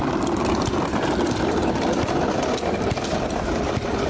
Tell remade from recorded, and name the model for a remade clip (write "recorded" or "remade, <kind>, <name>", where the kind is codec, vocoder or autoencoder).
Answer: remade, vocoder, BigVGAN v2